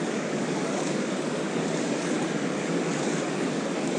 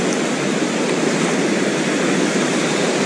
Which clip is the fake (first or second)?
first